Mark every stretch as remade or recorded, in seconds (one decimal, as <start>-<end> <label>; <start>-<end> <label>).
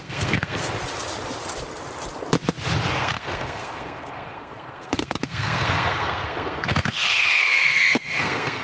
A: 0.0-0.6 remade; 0.6-2.9 recorded; 2.9-8.6 remade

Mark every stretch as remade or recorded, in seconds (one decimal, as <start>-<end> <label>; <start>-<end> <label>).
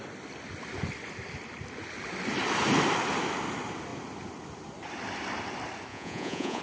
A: 0.0-5.9 recorded; 5.9-6.6 remade